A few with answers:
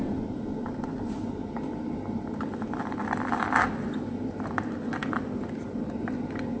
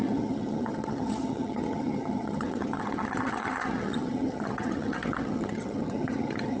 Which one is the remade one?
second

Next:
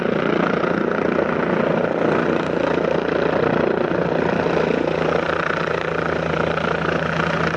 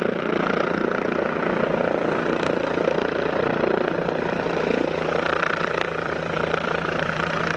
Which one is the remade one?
second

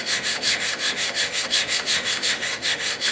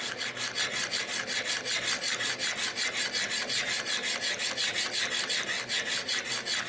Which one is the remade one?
first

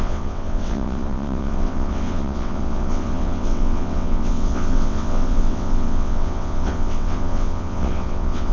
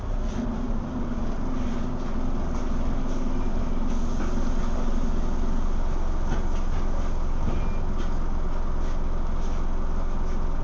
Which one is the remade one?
first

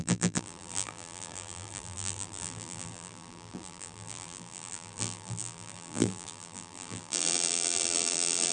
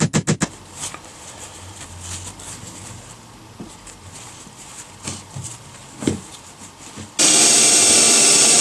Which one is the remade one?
first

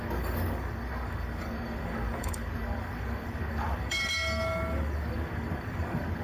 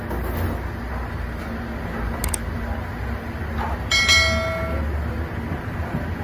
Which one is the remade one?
first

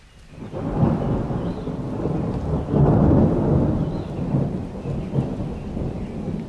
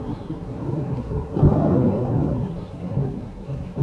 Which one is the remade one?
second